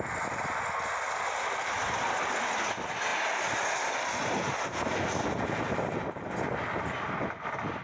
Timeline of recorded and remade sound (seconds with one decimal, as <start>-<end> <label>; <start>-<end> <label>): 0.0-7.8 recorded